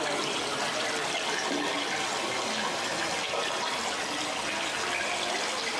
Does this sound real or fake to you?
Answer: real